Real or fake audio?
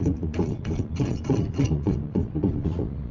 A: fake